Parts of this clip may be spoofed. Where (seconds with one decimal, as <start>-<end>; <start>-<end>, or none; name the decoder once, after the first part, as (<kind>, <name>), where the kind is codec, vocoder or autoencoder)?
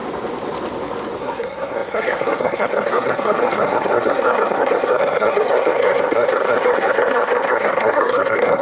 1.2-8.6 (codec, SNAC)